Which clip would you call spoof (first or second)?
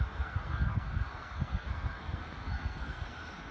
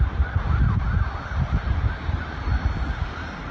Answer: first